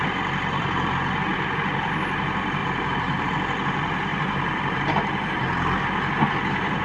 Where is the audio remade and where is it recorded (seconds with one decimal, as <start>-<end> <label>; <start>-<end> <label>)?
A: 0.0-2.6 recorded; 2.6-3.3 remade; 3.3-4.1 recorded; 4.1-4.8 remade; 4.8-6.8 recorded